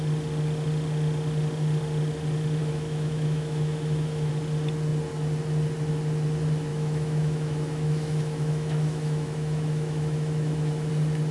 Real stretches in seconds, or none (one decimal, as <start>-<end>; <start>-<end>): 0.0-2.6; 4.3-6.7; 10.9-11.3